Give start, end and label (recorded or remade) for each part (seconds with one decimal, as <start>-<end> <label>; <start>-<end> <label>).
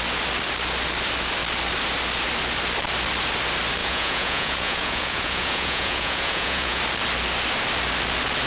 0.0-3.8 recorded; 3.8-6.8 remade; 6.8-8.5 recorded